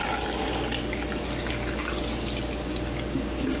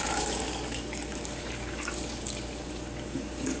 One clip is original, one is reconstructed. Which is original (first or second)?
first